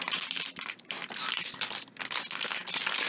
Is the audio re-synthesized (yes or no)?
no